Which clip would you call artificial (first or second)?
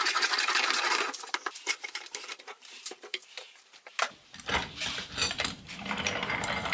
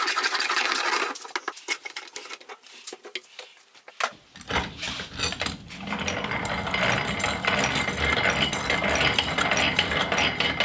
first